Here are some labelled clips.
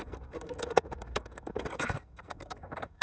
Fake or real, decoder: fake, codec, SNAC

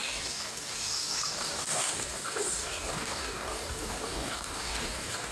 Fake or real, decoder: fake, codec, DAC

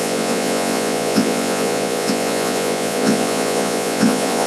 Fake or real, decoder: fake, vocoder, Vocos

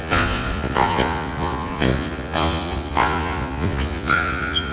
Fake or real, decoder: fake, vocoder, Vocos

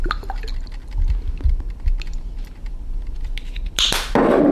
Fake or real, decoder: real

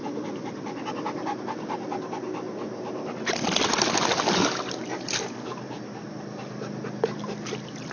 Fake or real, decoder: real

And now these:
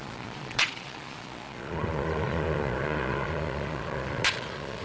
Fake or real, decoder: fake, vocoder, Vocos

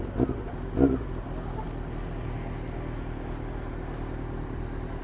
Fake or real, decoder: real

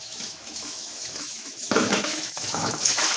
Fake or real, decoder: fake, autoencoder, DAC-VAE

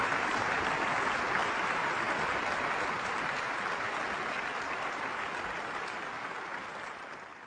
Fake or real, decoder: real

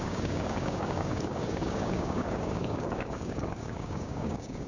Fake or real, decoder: fake, codec, DAC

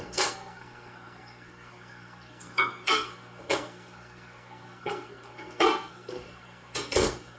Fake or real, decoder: fake, codec, SNAC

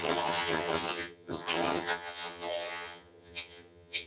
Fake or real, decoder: fake, vocoder, HiFi-GAN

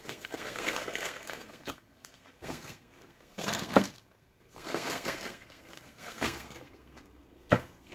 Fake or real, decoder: fake, codec, SNAC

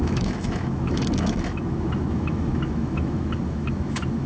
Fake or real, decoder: fake, autoencoder, DAC-VAE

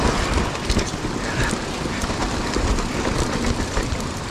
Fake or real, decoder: real